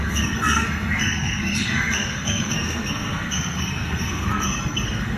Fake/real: fake